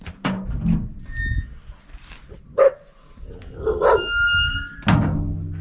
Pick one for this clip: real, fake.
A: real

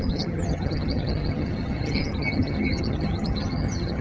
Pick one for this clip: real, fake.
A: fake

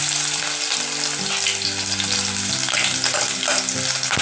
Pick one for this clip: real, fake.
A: real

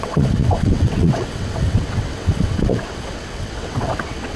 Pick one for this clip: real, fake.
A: fake